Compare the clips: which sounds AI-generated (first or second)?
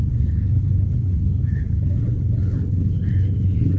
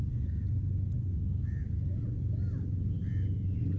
first